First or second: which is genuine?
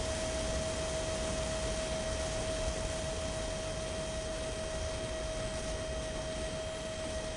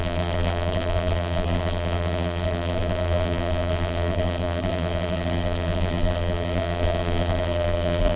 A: first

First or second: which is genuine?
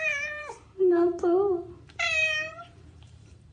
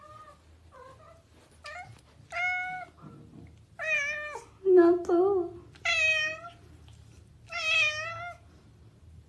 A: second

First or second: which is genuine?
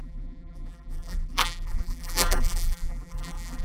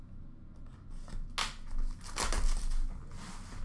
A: second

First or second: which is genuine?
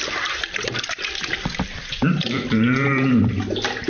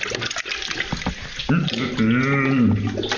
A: second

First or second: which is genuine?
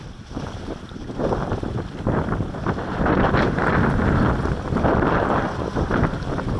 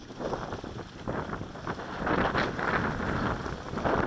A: second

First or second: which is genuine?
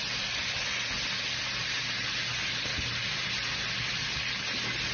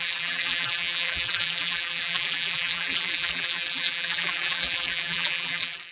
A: first